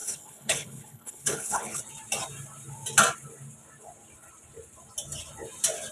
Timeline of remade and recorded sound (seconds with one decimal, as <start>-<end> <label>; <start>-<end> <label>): 0.0-1.8 remade; 1.8-5.9 recorded